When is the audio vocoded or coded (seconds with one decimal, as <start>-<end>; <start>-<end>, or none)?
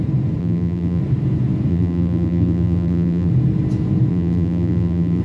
0.4-1.0; 1.7-3.3; 4.1-5.2